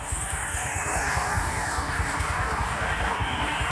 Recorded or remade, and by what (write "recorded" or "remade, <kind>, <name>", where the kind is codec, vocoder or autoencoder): remade, codec, DAC